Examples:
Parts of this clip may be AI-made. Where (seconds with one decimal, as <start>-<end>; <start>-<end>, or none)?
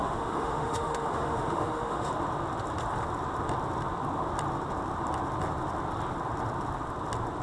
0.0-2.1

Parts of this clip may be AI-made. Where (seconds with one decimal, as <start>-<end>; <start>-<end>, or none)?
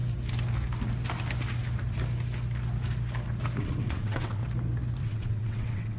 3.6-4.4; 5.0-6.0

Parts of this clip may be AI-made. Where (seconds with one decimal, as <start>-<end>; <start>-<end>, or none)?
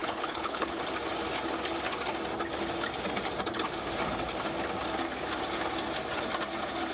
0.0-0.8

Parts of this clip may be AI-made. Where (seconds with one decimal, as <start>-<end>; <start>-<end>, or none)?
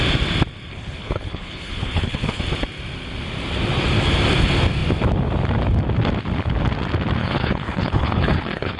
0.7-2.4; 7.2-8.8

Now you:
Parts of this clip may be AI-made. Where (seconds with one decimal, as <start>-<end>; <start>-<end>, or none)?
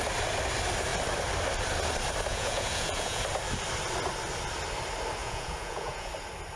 2.3-3.2; 5.2-6.1